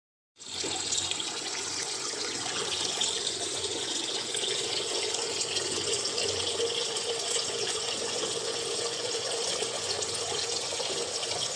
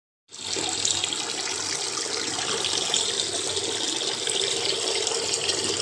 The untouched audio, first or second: second